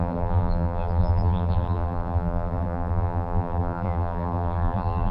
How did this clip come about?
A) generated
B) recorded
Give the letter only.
A